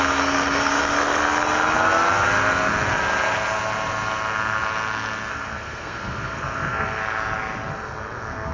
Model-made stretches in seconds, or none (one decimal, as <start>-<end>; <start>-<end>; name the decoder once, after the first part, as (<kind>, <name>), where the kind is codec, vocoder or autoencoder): 0.0-1.2 (codec, SNAC); 5.3-7.0; 7.7-8.5